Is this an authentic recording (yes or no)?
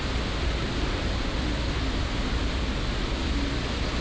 yes